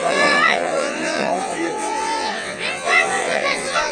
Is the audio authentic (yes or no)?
no